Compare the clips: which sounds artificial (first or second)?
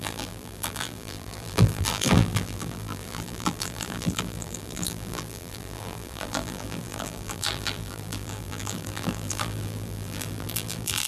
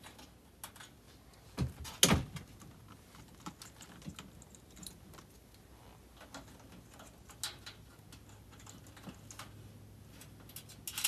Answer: first